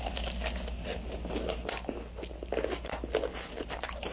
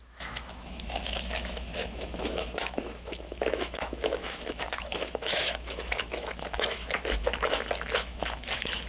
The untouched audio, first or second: first